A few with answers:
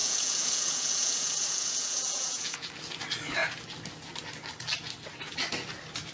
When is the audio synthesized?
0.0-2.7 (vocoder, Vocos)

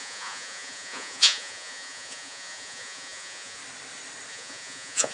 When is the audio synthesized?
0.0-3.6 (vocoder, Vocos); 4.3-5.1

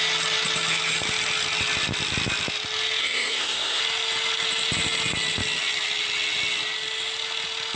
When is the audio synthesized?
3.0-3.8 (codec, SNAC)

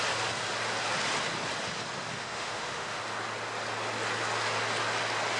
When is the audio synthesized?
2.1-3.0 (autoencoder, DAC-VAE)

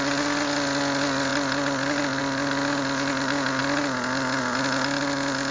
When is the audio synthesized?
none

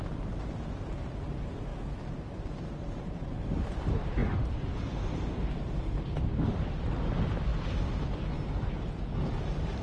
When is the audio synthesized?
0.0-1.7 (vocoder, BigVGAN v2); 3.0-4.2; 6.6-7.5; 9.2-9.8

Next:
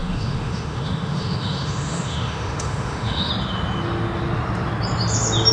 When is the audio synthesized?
0.0-3.3 (autoencoder, DAC-VAE)

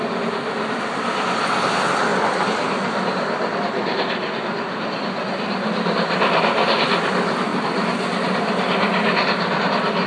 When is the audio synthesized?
none